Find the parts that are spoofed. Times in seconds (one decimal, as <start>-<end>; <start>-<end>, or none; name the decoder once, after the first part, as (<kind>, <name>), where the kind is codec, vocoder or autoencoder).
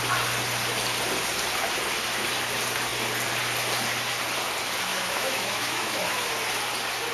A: 4.9-6.3 (autoencoder, DAC-VAE)